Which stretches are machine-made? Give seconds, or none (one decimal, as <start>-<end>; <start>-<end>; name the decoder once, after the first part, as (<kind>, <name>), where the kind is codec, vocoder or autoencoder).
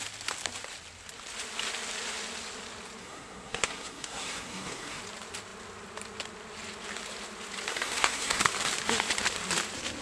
3.0-5.0 (codec, SNAC); 7.7-8.4